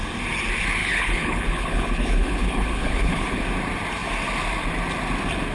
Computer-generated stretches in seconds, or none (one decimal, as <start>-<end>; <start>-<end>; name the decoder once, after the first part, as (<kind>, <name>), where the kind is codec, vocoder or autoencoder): 0.8-3.4 (codec, HILCodec)